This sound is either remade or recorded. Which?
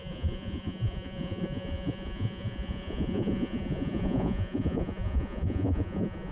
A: remade